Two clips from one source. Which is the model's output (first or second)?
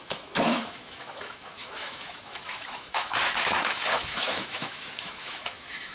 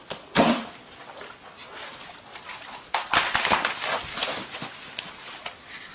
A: first